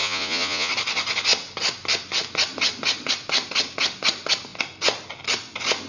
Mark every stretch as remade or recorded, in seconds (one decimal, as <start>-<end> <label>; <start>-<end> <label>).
0.0-0.7 remade; 0.7-5.9 recorded